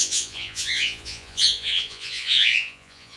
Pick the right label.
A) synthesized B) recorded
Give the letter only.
A